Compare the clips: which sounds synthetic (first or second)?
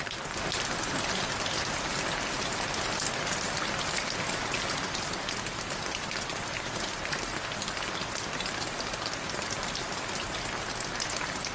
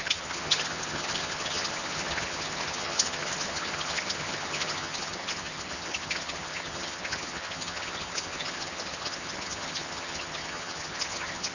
second